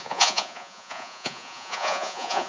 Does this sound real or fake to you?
fake